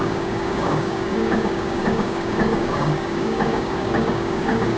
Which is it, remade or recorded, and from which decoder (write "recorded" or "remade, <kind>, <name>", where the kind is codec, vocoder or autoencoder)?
remade, codec, DAC